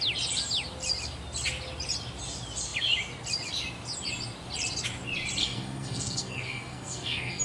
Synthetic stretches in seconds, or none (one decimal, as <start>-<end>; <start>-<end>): 5.4-7.4